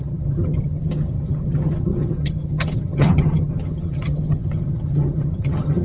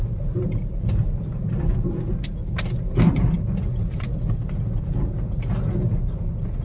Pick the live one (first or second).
second